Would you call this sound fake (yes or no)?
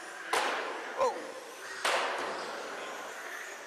no